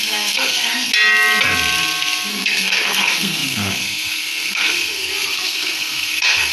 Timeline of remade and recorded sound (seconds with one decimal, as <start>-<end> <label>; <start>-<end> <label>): 0.0-0.9 remade; 0.9-2.3 recorded; 2.3-6.5 remade